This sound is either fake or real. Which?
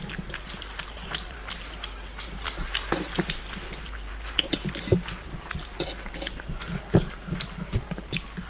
real